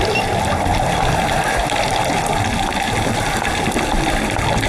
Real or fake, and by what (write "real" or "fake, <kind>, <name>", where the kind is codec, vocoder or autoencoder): fake, vocoder, BigVGAN v2